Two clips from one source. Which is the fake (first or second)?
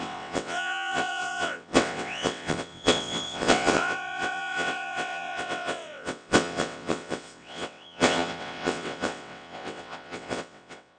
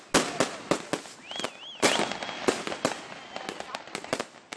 first